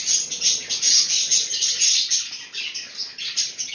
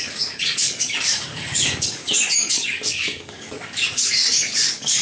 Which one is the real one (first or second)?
first